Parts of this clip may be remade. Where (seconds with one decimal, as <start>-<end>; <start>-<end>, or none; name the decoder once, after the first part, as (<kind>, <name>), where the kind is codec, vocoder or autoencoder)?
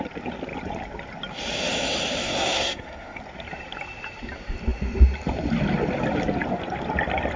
2.2-3.2 (codec, SNAC)